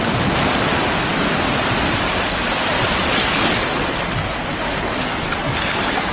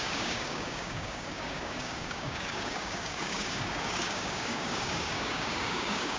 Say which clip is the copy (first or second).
second